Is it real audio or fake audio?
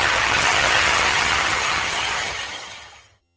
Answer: fake